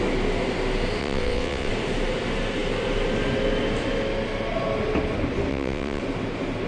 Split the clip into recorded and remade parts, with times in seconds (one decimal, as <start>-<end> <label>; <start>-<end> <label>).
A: 0.0-1.0 recorded; 1.0-1.7 remade; 1.7-5.5 recorded; 5.5-6.0 remade; 6.0-6.7 recorded